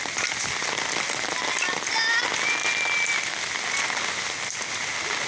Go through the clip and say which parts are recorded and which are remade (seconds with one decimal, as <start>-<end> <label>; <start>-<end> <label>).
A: 0.0-5.3 recorded